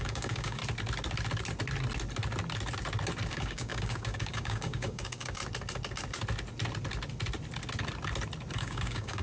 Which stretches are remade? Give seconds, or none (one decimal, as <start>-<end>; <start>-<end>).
0.0-0.6; 3.3-5.4; 8.5-9.2

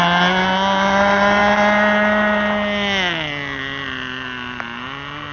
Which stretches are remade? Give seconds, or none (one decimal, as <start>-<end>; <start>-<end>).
none

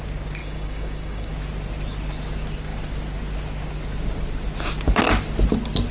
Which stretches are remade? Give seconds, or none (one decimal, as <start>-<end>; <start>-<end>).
0.4-1.3

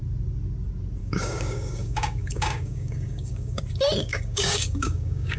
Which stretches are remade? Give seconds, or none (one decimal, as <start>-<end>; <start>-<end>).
1.0-3.6; 4.0-5.4

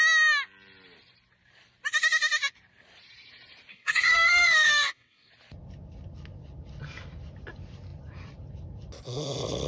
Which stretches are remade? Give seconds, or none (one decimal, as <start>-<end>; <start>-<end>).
3.7-5.3

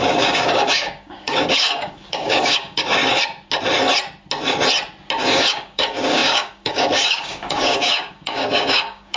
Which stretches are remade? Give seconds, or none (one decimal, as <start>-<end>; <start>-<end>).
0.0-3.0; 5.3-9.2